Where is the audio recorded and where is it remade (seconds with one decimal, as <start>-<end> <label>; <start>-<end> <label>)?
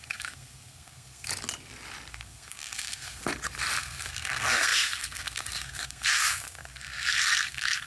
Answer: 0.0-1.3 remade; 1.3-2.1 recorded; 2.1-3.2 remade; 3.2-3.8 recorded; 3.8-7.9 remade